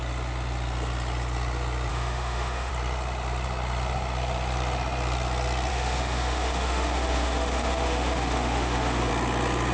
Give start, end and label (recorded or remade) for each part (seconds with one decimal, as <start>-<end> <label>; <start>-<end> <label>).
0.0-1.9 recorded; 1.9-2.7 remade; 2.7-5.7 recorded; 5.7-9.1 remade; 9.1-9.7 recorded